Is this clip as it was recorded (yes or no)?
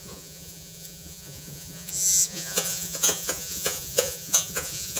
no